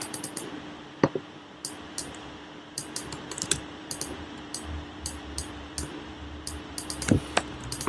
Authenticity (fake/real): fake